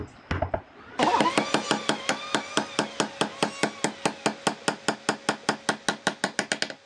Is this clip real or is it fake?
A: real